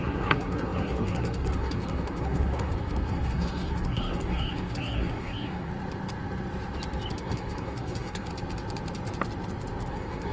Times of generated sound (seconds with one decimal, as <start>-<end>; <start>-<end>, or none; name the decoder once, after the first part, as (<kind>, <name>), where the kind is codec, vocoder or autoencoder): 0.0-5.7 (codec, SNAC); 7.1-8.3; 9.9-10.3